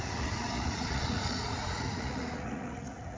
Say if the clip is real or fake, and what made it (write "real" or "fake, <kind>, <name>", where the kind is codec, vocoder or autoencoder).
fake, vocoder, Vocos